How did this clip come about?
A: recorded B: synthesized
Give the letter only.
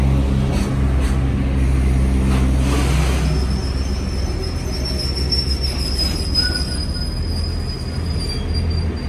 A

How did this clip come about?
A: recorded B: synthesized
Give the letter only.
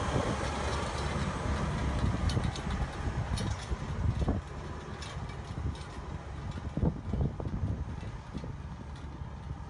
A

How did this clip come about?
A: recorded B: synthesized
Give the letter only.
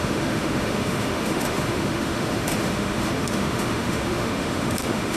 B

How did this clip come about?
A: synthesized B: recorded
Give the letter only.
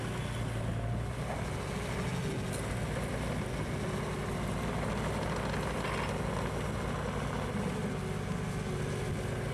B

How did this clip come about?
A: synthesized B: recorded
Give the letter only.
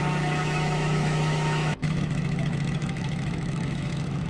A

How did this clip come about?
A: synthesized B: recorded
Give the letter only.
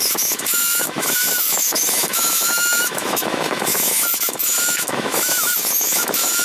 A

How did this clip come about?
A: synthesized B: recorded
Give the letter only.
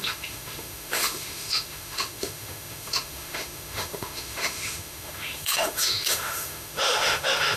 A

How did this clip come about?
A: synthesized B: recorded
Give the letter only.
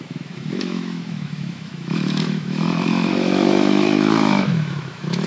A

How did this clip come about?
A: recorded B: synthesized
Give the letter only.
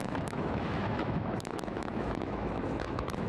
B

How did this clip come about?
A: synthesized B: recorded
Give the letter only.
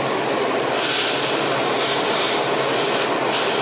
B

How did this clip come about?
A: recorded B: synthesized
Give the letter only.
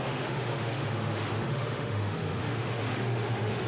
B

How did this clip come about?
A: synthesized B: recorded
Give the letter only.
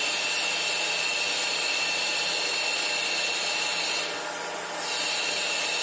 B